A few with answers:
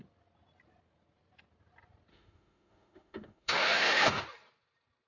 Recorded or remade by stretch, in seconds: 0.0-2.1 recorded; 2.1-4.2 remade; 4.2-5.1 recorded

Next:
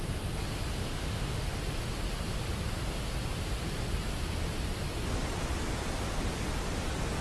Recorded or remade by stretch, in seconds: 0.0-0.9 recorded; 0.9-1.6 remade; 1.6-7.2 recorded

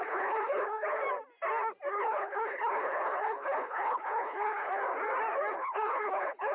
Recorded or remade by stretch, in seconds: 0.0-1.0 remade; 1.0-1.9 recorded; 1.9-4.8 remade; 4.8-5.5 recorded; 5.5-6.5 remade

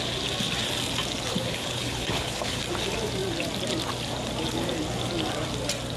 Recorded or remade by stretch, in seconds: 0.0-1.3 recorded; 1.3-2.6 remade; 2.6-6.0 recorded

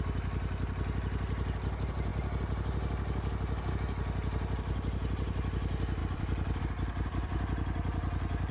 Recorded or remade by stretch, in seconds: 0.0-6.0 recorded; 6.0-6.6 remade; 6.6-8.5 recorded

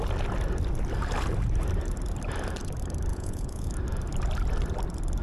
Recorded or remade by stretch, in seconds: 0.0-3.1 recorded; 3.1-3.7 remade; 3.7-5.2 recorded

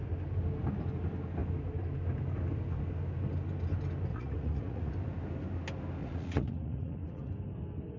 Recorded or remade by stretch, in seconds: 0.0-4.1 recorded; 4.1-4.9 remade; 4.9-6.0 recorded; 6.0-7.3 remade; 7.3-8.0 recorded